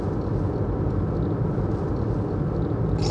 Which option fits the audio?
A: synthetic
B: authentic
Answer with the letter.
B